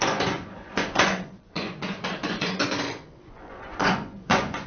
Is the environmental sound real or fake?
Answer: fake